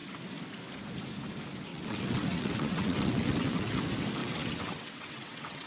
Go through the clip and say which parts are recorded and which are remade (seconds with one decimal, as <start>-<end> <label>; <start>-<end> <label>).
0.0-1.7 recorded; 1.7-3.8 remade; 3.8-4.2 recorded; 4.2-5.7 remade